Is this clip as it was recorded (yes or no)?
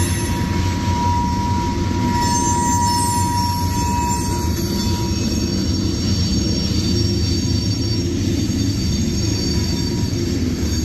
yes